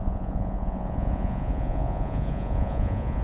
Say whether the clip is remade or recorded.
remade